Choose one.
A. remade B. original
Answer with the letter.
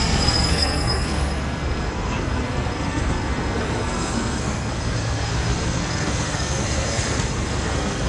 A